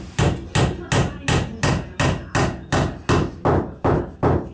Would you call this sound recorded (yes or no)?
yes